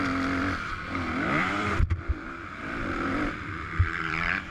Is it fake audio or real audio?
fake